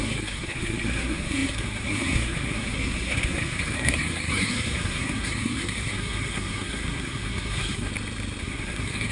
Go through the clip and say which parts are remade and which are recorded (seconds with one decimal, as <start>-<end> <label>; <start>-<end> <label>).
0.0-7.9 remade; 7.9-8.4 recorded; 8.4-9.1 remade